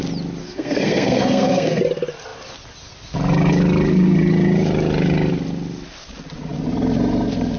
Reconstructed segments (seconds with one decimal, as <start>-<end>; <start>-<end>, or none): 0.4-1.8